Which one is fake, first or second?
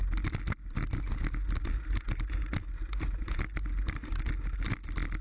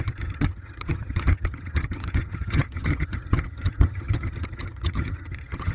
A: second